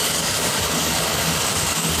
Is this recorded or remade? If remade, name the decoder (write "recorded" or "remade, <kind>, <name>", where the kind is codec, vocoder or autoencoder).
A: remade, codec, DAC